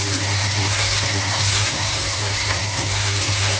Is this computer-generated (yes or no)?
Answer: yes